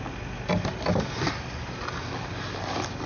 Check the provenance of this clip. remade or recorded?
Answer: recorded